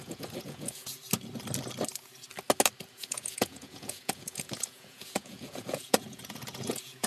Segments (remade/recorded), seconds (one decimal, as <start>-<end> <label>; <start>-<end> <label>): 0.0-1.0 remade; 1.0-2.9 recorded; 2.9-7.1 remade